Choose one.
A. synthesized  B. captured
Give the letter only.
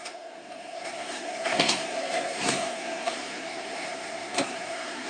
A